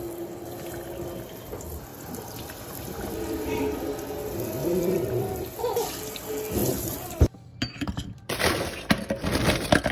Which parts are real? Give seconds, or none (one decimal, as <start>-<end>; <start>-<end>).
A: 0.0-1.9; 3.6-4.6; 5.6-6.6; 8.5-9.9